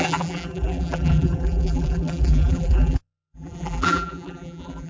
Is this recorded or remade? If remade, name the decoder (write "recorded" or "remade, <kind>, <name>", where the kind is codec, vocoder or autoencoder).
remade, vocoder, BigVGAN v2